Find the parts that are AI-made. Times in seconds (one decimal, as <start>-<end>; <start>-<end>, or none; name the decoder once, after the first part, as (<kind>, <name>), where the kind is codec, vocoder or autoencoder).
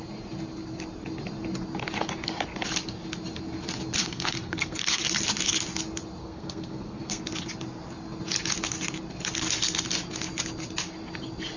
4.0-5.0 (codec, SNAC); 6.2-7.2